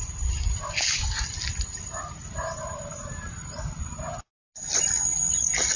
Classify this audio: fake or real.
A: real